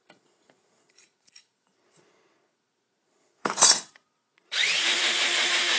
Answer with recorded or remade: remade